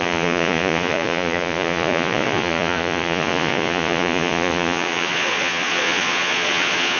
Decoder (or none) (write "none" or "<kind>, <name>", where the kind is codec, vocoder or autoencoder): vocoder, Vocos